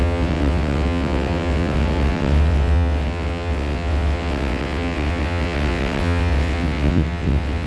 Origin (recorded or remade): remade